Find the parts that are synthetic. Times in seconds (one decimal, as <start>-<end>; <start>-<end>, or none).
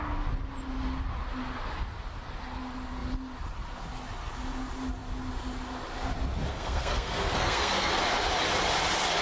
6.5-7.9